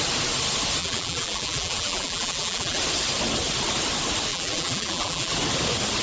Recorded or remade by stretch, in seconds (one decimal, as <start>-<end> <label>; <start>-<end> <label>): 0.0-0.8 recorded; 0.8-2.8 remade; 2.8-4.3 recorded; 4.3-5.3 remade; 5.3-6.0 recorded

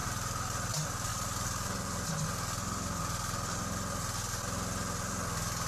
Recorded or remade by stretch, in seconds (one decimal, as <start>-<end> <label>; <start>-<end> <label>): 0.0-0.7 remade; 0.7-1.1 recorded; 1.1-2.1 remade; 2.1-5.7 recorded

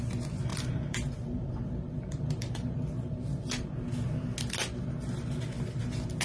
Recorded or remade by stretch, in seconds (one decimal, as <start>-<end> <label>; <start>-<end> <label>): 0.0-0.5 recorded; 0.5-3.5 remade; 3.5-6.2 recorded

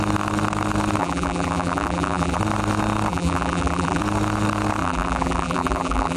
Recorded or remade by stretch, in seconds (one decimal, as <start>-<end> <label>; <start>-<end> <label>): 0.0-1.0 recorded; 1.0-2.4 remade; 2.4-3.1 recorded; 3.1-4.0 remade; 4.0-4.8 recorded; 4.8-6.2 remade

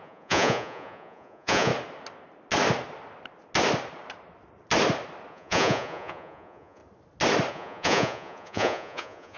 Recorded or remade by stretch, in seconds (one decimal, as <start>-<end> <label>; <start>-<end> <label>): 0.0-1.7 remade; 1.7-5.3 recorded; 5.3-6.8 remade; 6.8-7.5 recorded; 7.5-9.4 remade

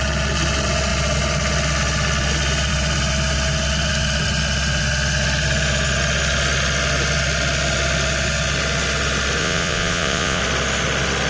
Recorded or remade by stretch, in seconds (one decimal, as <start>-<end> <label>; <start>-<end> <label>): 0.0-9.4 recorded; 9.4-10.4 remade; 10.4-11.3 recorded